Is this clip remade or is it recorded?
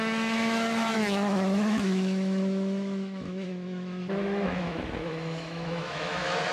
remade